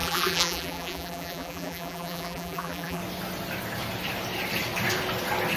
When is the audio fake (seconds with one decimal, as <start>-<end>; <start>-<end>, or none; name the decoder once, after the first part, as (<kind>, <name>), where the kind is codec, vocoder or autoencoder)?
0.0-3.0 (vocoder, BigVGAN v2)